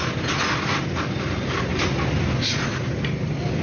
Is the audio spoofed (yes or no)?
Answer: no